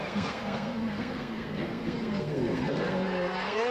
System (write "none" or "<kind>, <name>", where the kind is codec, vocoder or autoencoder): codec, SNAC